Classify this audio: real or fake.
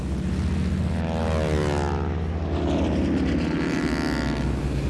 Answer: real